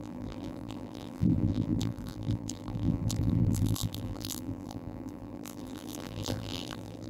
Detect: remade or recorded remade